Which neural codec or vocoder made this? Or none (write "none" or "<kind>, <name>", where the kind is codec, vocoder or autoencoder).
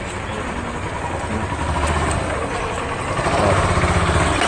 none